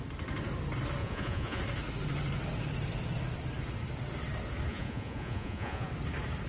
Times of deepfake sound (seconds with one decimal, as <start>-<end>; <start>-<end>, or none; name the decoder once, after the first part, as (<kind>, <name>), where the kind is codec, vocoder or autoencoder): 1.0-1.6 (vocoder, Vocos); 4.7-5.9